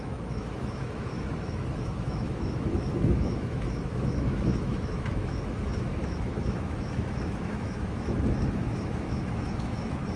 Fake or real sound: fake